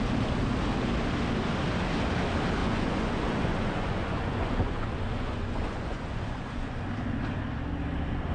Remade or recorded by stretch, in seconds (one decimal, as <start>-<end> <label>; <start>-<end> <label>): 0.0-2.6 recorded; 2.6-6.8 remade; 6.8-8.3 recorded